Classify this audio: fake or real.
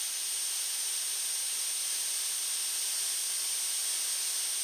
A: real